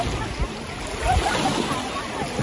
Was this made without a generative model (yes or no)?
yes